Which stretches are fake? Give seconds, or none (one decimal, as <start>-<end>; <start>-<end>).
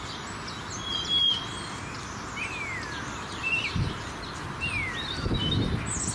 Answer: 0.9-1.8